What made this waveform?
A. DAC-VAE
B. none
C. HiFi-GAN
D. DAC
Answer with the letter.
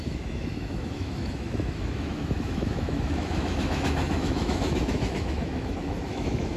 A